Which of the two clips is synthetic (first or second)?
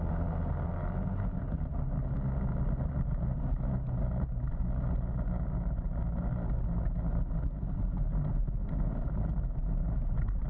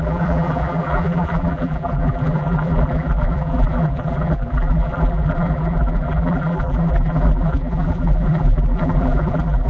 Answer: second